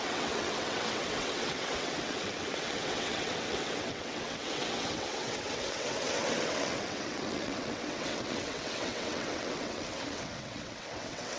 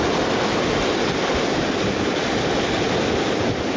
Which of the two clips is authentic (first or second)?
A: second